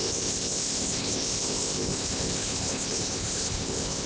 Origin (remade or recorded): remade